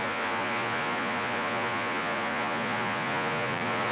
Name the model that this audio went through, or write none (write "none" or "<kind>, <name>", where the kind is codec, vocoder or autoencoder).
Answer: vocoder, Vocos